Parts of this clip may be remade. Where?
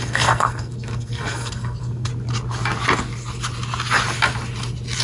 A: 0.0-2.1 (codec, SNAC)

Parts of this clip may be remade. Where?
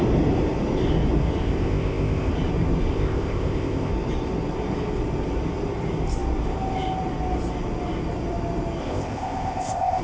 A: 1.4-2.3 (codec, ZipCodec); 2.9-3.9; 8.8-10.0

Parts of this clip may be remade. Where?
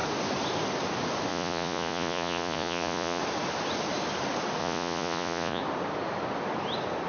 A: 1.3-3.2 (vocoder, Vocos); 4.6-5.6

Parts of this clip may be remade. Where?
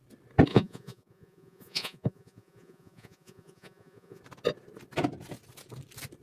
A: 0.5-4.2 (vocoder, Vocos)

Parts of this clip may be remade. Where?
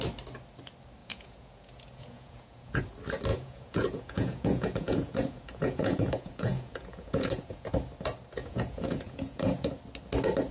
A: 1.0-2.8 (vocoder, Vocos); 3.3-7.7; 8.4-9.7